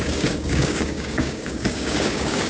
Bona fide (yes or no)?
no